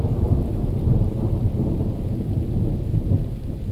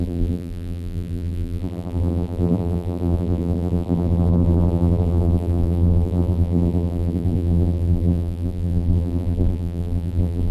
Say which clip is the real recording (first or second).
first